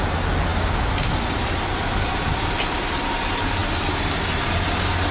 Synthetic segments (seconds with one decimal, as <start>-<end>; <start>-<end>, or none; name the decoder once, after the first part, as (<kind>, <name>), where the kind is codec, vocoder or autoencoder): none